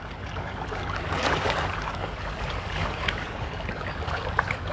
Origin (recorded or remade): remade